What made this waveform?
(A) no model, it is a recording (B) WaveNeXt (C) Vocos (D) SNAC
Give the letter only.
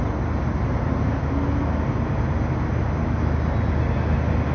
A